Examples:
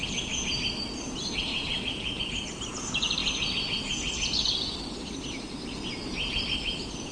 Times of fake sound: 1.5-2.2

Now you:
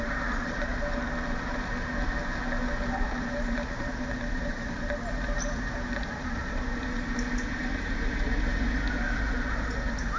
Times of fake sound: 0.0-0.7; 3.2-10.2

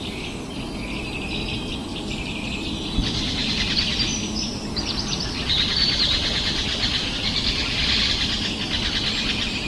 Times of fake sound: 1.9-2.9; 3.4-7.1

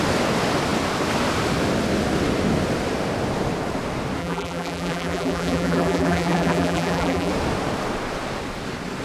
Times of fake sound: 4.2-7.3

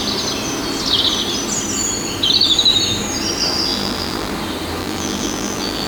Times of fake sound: 3.7-4.3; 4.8-5.9

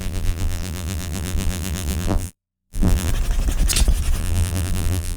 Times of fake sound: 0.0-3.1; 4.2-5.2

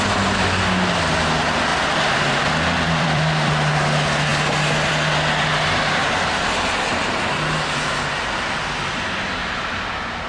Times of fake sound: 1.7-3.5

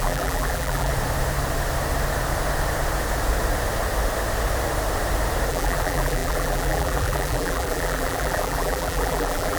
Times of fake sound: 0.0-0.9; 5.5-9.6